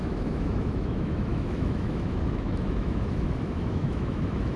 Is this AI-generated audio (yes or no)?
yes